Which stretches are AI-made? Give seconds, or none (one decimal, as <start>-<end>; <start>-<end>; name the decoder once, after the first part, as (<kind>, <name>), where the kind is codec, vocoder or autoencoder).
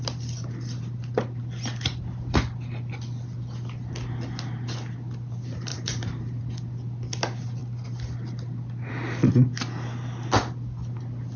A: 5.7-6.4 (vocoder, BigVGAN v2)